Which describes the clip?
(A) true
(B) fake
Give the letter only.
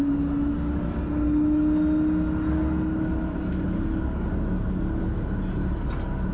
A